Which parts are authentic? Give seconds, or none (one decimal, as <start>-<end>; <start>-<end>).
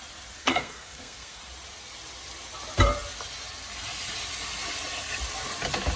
0.0-0.4; 1.4-6.0